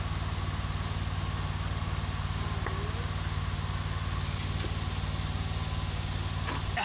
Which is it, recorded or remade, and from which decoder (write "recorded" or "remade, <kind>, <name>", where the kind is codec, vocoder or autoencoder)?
recorded